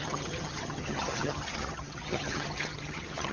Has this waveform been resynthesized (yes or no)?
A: yes